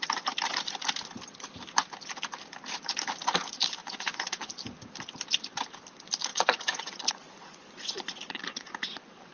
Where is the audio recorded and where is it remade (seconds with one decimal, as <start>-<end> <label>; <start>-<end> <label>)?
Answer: 0.0-3.8 recorded; 3.8-4.5 remade; 4.5-6.3 recorded; 6.3-9.3 remade